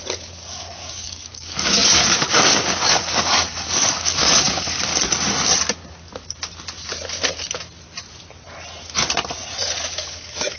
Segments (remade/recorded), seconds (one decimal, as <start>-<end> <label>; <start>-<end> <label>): 0.0-4.9 remade; 4.9-9.8 recorded; 9.8-10.6 remade